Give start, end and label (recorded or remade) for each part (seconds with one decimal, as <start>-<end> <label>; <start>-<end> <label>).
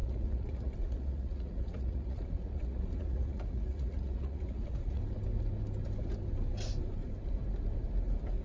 0.0-5.0 remade; 5.0-8.4 recorded